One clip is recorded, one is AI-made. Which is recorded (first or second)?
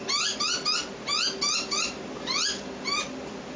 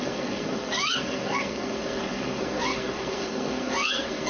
first